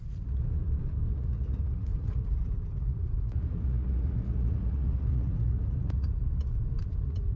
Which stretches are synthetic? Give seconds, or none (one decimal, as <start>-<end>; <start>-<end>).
0.0-0.4; 1.1-6.2; 6.8-7.4

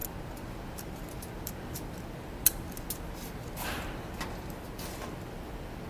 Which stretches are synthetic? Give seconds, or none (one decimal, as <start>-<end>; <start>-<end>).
none

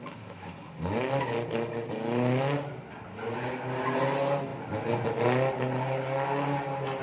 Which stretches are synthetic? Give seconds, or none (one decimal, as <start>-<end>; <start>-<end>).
none

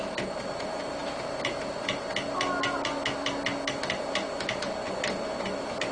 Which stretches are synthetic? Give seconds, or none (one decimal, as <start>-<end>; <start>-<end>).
none